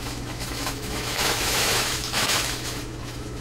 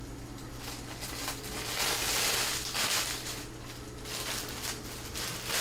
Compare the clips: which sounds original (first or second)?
second